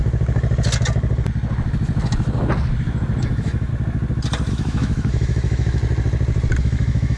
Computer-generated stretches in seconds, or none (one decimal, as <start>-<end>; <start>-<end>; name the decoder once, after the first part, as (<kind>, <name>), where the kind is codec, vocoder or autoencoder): 3.2-3.7 (autoencoder, DAC-VAE); 4.5-5.8; 6.6-7.2